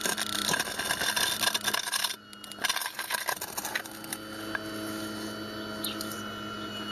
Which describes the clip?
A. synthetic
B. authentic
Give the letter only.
B